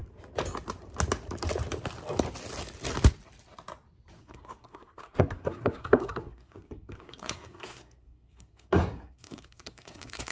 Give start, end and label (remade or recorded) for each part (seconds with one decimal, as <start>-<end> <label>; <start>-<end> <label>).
0.0-4.2 recorded; 4.2-10.3 remade

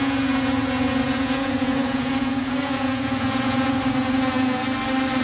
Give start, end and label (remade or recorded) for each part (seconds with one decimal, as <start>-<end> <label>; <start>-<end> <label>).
0.0-4.6 remade; 4.6-5.2 recorded

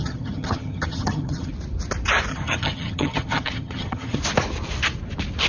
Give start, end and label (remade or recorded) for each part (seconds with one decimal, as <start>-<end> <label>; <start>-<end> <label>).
0.0-1.5 remade; 1.5-2.3 recorded; 2.3-4.2 remade; 4.2-5.5 recorded

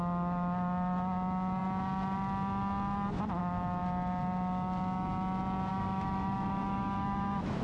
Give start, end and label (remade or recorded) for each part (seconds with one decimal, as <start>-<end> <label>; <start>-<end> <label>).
0.0-5.7 recorded; 5.7-7.6 remade

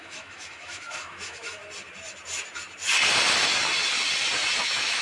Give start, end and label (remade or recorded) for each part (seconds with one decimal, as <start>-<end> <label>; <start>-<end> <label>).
0.0-1.6 remade; 1.6-4.6 recorded; 4.6-5.0 remade